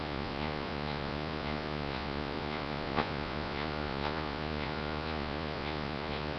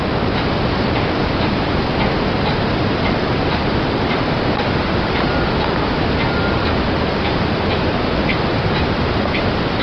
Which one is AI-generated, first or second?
first